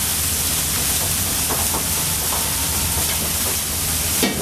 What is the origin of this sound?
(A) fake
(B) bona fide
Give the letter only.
B